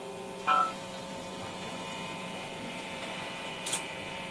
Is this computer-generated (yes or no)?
yes